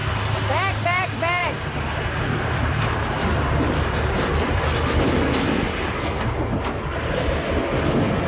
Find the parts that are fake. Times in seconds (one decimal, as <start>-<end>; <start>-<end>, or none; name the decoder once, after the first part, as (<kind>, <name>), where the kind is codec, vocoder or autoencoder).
1.4-4.6 (vocoder, BigVGAN v2); 6.9-7.5